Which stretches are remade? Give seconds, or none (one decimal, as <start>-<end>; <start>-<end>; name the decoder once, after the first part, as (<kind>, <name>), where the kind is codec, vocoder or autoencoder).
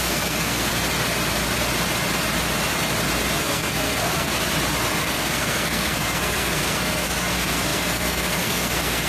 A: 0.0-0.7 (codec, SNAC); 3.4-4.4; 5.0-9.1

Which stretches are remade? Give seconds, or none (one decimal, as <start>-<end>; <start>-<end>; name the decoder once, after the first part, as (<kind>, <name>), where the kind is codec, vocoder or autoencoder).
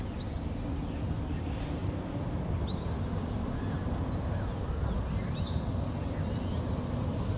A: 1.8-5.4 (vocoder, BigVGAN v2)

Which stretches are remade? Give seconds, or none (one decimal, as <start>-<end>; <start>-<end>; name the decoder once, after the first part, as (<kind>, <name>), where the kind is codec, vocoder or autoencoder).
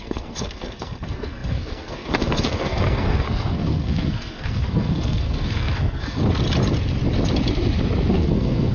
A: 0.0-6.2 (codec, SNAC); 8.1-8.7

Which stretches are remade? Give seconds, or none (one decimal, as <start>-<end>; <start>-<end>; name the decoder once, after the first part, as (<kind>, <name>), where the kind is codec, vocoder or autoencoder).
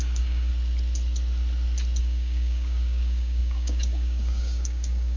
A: 0.0-0.5 (codec, DAC); 2.0-5.2